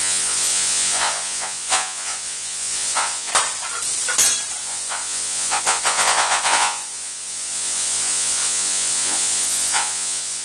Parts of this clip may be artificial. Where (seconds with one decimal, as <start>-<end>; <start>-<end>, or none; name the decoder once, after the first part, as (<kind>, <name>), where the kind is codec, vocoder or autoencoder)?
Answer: 0.0-3.3 (vocoder, Vocos); 4.6-10.4